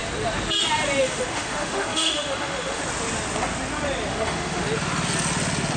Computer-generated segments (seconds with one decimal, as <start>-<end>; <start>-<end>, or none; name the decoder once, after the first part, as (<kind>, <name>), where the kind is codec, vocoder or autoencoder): 1.0-2.8 (autoencoder, DAC-VAE); 4.1-4.6